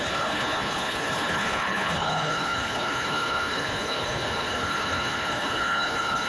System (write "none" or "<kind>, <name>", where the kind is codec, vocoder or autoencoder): codec, HILCodec